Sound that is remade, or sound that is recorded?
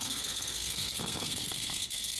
remade